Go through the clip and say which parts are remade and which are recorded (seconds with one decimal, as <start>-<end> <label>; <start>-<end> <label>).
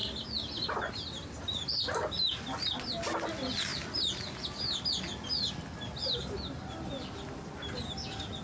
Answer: 0.0-8.4 recorded